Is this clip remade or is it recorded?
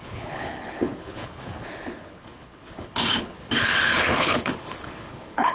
remade